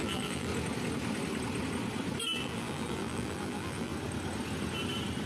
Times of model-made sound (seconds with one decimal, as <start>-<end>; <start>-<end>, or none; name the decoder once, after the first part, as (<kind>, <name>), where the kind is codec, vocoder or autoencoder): 0.0-0.5 (vocoder, BigVGAN v2); 2.3-3.9